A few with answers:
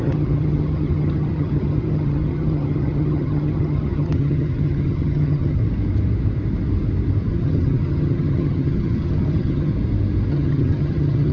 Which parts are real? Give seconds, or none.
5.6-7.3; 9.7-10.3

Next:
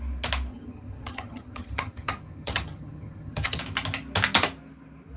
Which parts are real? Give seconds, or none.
0.0-0.5; 3.6-5.2

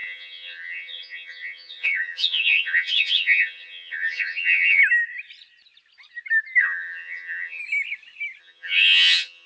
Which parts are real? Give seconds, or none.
4.8-6.6; 7.6-8.4

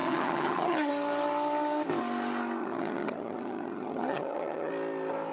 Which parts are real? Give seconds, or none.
0.9-2.6; 4.7-5.3

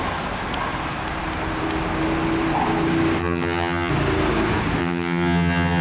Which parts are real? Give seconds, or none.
0.0-3.2; 3.9-4.8